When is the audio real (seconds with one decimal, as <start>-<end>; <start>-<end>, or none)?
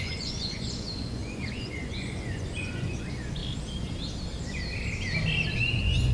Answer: 3.4-5.5